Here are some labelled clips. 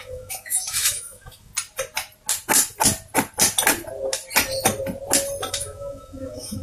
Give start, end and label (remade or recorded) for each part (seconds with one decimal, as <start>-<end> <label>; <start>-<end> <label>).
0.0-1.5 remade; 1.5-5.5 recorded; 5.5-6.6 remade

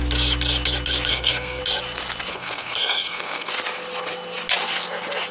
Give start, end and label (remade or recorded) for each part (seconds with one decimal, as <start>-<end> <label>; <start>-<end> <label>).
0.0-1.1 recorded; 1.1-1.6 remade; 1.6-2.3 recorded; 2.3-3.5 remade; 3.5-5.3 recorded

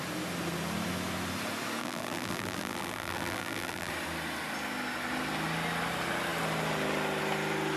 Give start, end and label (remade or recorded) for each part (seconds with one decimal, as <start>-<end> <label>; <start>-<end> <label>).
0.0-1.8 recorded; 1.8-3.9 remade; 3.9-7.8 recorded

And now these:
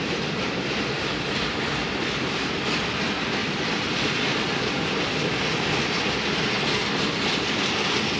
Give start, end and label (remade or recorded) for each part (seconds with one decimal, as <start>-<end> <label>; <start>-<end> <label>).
0.0-8.2 recorded